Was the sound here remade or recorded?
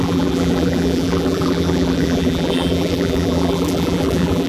remade